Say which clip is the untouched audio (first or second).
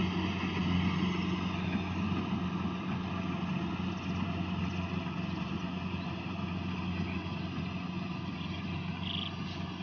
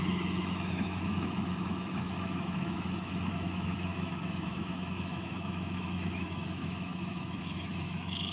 first